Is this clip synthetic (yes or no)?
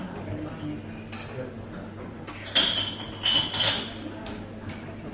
no